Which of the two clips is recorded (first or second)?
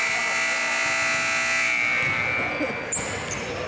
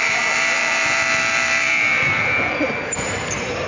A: first